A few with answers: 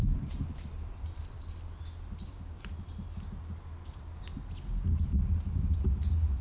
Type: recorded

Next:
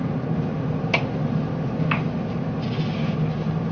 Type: recorded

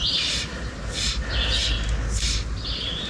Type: recorded